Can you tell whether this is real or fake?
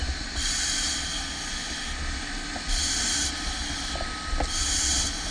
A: real